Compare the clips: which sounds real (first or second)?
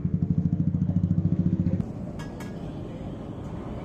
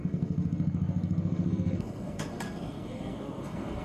first